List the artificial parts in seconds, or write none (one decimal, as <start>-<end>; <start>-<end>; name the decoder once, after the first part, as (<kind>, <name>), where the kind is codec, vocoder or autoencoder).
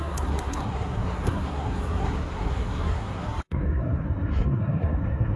0.0-5.4 (codec, SNAC)